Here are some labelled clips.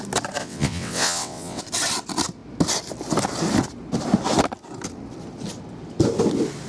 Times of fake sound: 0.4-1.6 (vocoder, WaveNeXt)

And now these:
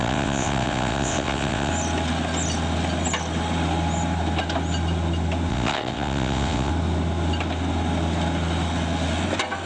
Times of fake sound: 0.0-1.7 (vocoder, WaveNeXt); 5.5-6.7

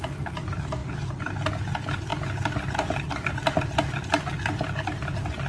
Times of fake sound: none

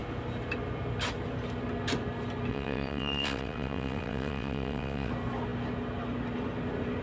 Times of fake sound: 2.5-5.1 (vocoder, WaveNeXt)

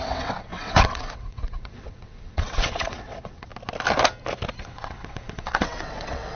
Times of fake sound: 0.0-3.5 (vocoder, WaveNeXt); 4.6-6.3